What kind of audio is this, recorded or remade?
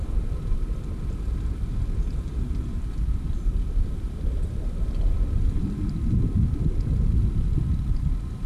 recorded